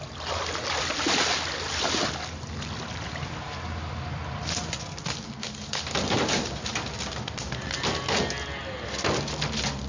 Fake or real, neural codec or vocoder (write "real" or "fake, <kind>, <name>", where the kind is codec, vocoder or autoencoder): real